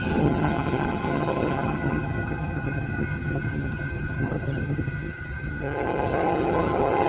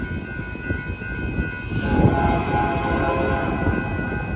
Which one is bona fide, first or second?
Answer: second